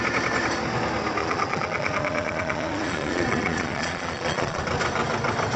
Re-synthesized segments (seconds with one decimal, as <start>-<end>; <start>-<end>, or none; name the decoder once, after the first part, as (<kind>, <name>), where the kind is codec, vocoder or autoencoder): 1.2-4.6 (vocoder, Vocos)